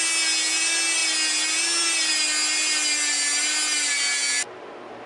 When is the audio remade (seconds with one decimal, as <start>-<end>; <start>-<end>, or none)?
none